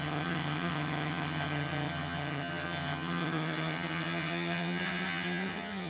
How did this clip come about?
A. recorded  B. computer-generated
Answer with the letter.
B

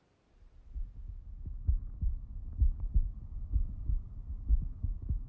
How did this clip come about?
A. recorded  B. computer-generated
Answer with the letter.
A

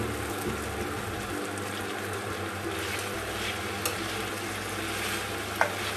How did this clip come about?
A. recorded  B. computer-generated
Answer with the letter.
A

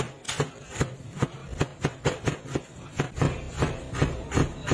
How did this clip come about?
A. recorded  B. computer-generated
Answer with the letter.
A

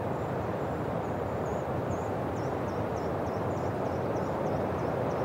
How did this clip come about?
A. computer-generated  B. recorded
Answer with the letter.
B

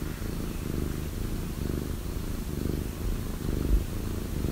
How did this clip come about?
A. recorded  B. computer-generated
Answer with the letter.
A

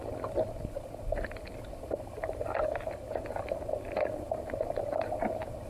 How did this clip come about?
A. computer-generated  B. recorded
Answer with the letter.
B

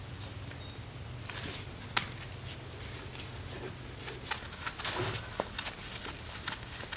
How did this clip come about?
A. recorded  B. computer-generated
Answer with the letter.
A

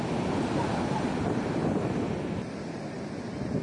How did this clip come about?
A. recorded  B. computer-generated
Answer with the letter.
A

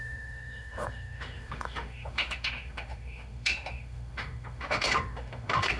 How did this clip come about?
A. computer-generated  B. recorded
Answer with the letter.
A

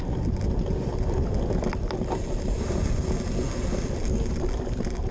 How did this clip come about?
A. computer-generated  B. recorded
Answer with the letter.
B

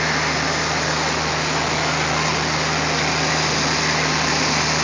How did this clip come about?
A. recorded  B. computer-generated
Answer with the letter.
A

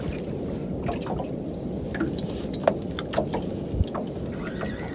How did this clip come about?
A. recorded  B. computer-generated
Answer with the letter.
A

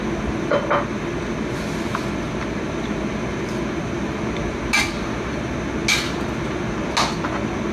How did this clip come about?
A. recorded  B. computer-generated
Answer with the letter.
A